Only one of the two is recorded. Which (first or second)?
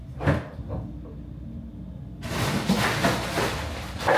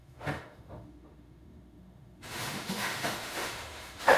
first